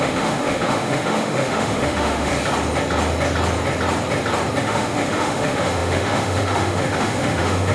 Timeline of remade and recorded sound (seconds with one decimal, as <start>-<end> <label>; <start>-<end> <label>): 0.0-2.3 remade; 2.3-4.6 recorded; 4.6-7.7 remade